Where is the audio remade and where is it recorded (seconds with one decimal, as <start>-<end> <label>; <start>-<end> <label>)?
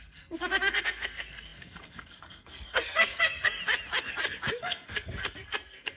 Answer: 0.0-3.6 remade; 3.6-4.6 recorded; 4.6-6.0 remade